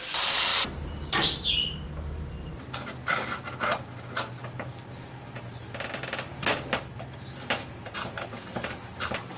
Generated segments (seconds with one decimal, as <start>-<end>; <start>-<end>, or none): 0.5-2.5